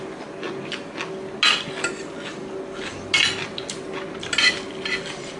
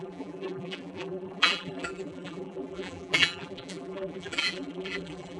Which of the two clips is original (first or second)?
first